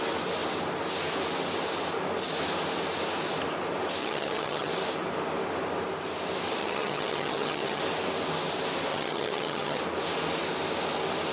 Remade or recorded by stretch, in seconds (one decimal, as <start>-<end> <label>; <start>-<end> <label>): 0.0-4.0 recorded; 4.0-4.7 remade; 4.7-6.6 recorded; 6.6-7.8 remade; 7.8-8.9 recorded; 8.9-9.8 remade; 9.8-11.3 recorded